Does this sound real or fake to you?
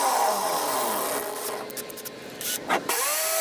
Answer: real